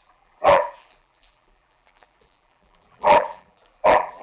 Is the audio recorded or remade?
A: remade